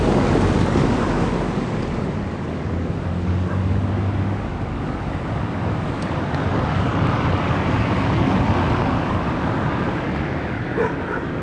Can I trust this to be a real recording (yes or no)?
no